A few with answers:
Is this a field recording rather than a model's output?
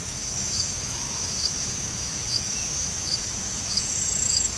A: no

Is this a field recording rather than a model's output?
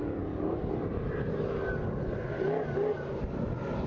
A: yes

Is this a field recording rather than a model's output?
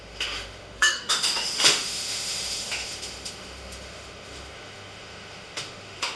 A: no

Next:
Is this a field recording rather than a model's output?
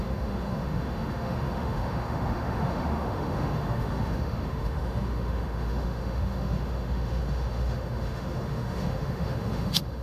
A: no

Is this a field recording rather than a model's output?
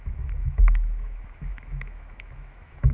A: no